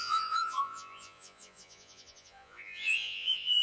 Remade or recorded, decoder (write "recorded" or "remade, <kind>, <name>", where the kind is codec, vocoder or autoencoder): remade, vocoder, Vocos